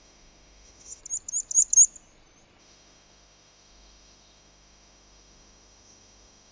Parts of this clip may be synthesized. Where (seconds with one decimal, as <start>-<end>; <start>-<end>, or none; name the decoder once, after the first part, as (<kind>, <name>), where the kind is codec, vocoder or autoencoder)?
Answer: 0.0-1.0 (autoencoder, DAC-VAE); 2.6-6.5